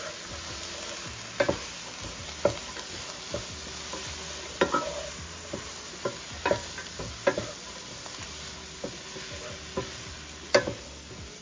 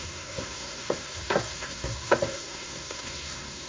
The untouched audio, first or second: first